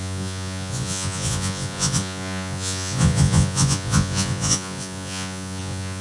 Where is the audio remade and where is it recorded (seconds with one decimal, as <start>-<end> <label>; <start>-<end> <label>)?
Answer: 0.0-6.0 remade